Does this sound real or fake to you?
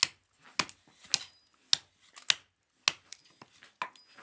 real